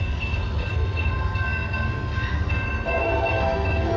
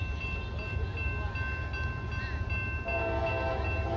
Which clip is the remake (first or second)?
first